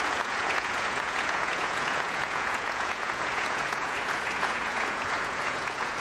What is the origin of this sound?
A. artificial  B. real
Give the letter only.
A